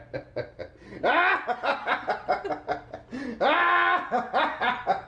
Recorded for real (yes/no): yes